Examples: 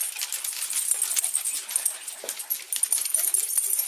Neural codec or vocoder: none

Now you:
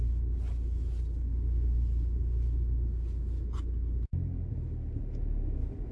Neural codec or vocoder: none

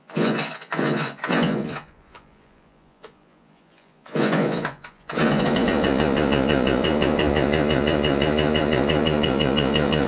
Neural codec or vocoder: vocoder, Vocos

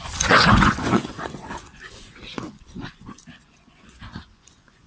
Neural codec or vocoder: vocoder, Vocos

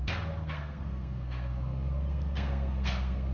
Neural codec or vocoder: codec, SNAC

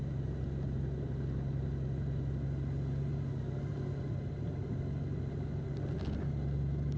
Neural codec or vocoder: none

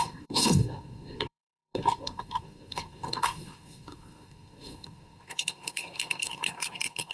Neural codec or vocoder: codec, SNAC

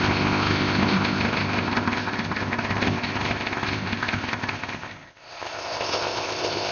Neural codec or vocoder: codec, ZipCodec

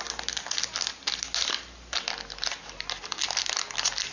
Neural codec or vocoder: none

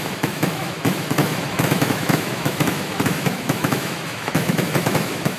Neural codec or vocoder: autoencoder, DAC-VAE